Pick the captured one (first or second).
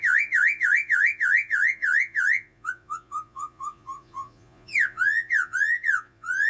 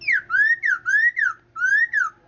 second